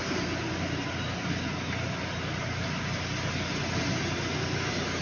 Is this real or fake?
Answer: real